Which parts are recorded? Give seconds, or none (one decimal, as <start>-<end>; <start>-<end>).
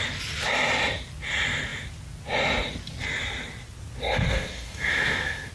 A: 0.0-4.0